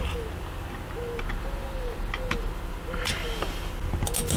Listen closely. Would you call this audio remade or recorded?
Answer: recorded